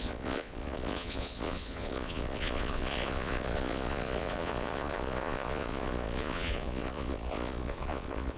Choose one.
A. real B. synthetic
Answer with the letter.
B